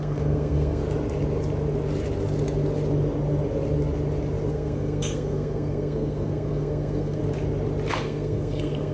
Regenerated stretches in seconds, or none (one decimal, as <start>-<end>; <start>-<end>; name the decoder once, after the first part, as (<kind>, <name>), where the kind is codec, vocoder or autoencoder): 0.0-0.8 (codec, SNAC); 4.5-7.2; 7.9-8.9